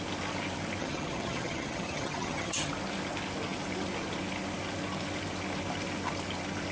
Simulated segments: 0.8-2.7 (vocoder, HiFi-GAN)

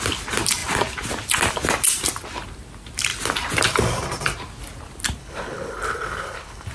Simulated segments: 5.2-6.7 (codec, HILCodec)

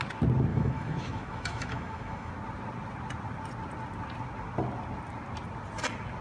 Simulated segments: 0.5-2.3 (autoencoder, DAC-VAE)

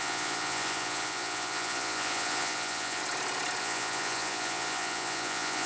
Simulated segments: 0.0-3.0 (vocoder, Vocos); 3.6-5.7

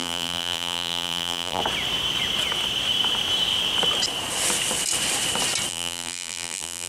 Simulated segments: 0.0-1.6 (vocoder, BigVGAN v2); 5.7-6.9

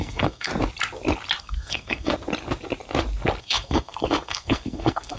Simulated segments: 0.0-0.5 (codec, SNAC); 1.4-2.1; 3.4-5.2